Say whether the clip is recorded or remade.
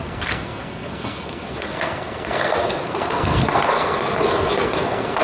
remade